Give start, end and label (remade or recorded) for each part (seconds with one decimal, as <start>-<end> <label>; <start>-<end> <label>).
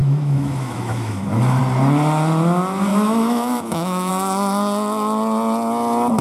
0.0-1.6 remade; 1.6-2.9 recorded; 2.9-4.1 remade; 4.1-6.2 recorded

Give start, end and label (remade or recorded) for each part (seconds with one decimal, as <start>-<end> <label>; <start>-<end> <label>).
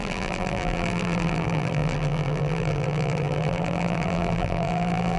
0.0-5.2 remade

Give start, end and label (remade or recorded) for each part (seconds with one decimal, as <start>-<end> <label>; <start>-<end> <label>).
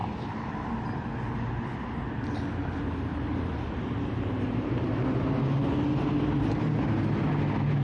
0.0-0.7 remade; 0.7-3.1 recorded; 3.1-5.0 remade; 5.0-7.8 recorded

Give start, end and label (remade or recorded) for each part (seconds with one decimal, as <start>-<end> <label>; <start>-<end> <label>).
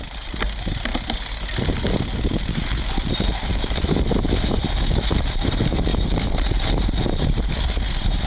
0.0-3.5 recorded; 3.5-4.6 remade; 4.6-8.3 recorded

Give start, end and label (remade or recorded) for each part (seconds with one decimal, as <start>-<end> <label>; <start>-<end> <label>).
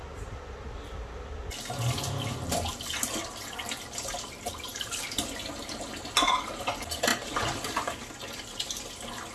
0.0-9.3 recorded